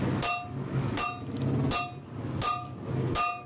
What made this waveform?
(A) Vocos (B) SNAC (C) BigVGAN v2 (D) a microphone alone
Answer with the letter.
D